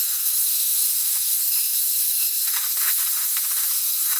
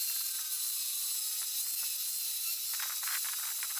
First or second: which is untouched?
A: second